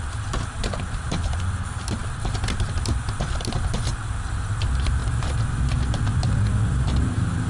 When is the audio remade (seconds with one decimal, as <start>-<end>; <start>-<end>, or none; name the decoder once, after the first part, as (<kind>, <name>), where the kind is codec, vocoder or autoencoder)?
0.0-7.5 (vocoder, BigVGAN v2)